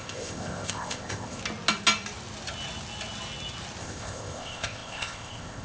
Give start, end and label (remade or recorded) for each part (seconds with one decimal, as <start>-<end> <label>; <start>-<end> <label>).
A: 0.0-1.4 remade; 1.4-3.8 recorded; 3.8-5.6 remade

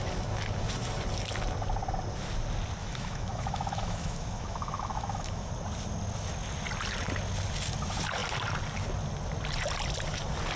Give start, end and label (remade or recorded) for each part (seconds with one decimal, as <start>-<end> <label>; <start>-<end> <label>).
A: 0.0-2.8 recorded; 2.8-5.5 remade; 5.5-10.6 recorded

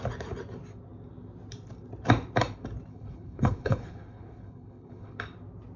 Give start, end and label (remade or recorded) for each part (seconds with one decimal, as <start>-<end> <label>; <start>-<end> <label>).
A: 0.0-2.9 recorded; 2.9-5.2 remade; 5.2-5.8 recorded

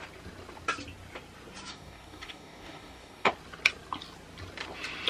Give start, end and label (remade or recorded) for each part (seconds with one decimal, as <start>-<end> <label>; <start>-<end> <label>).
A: 0.0-1.7 recorded; 1.7-3.3 remade; 3.3-5.1 recorded

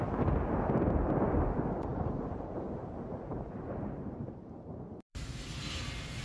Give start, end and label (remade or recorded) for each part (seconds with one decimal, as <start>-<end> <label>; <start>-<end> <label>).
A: 0.0-1.9 recorded; 1.9-5.6 remade; 5.6-6.2 recorded

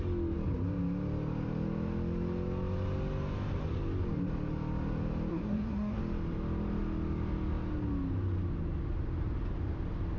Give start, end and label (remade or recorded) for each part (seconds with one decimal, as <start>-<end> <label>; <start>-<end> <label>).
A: 0.0-5.3 recorded; 5.3-6.0 remade; 6.0-10.2 recorded

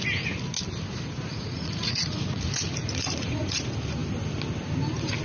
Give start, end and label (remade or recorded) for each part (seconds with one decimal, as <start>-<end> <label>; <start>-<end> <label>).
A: 0.0-1.3 recorded; 1.3-3.6 remade; 3.6-5.2 recorded

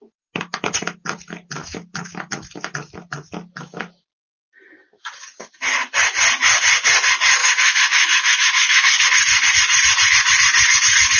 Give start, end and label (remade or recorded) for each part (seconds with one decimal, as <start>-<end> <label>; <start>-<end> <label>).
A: 0.0-1.6 recorded; 1.6-2.2 remade; 2.2-7.4 recorded; 7.4-9.0 remade; 9.0-11.2 recorded